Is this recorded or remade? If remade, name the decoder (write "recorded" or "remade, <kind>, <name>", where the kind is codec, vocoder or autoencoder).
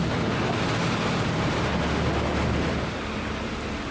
recorded